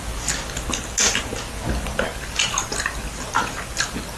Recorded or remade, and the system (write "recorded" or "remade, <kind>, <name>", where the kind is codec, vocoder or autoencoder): recorded